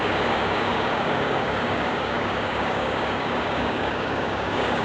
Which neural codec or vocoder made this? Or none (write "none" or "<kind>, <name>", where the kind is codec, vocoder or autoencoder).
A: codec, DAC